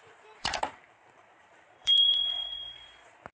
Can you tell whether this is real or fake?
fake